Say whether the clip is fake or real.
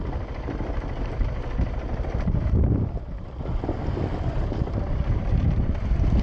real